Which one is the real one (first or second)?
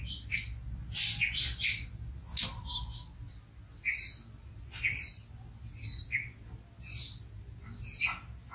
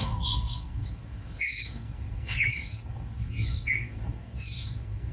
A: first